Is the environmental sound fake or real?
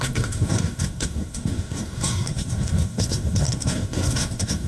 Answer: fake